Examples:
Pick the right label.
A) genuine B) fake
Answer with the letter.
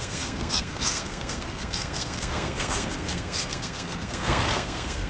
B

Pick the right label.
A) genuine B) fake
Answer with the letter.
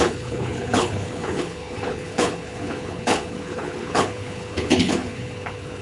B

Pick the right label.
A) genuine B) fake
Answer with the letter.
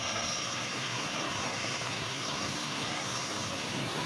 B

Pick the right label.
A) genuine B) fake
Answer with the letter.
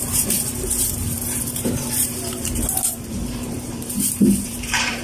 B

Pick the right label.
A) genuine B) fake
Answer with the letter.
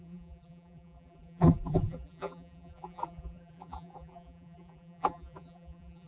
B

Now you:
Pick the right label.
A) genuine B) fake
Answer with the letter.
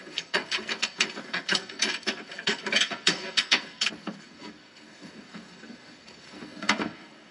B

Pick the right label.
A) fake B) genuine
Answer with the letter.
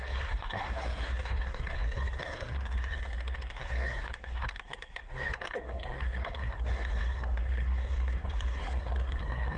A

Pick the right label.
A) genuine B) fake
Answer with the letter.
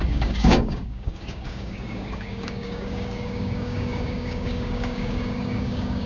B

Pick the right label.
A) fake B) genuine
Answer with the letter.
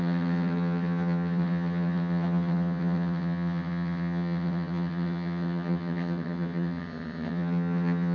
A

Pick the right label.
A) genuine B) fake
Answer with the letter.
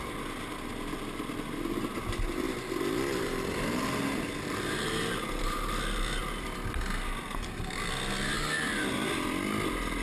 A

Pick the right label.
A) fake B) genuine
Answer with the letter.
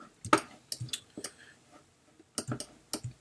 B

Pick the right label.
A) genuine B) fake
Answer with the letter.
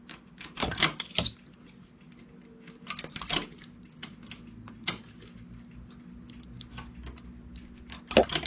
A